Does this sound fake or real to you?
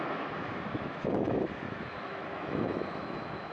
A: fake